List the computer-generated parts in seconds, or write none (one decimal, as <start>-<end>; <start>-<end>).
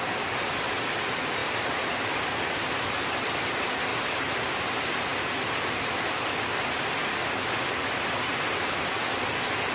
3.9-4.6